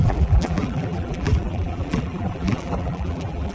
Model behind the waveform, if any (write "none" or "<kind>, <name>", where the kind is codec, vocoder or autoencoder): vocoder, BigVGAN v2